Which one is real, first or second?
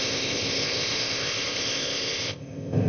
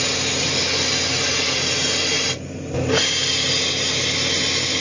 second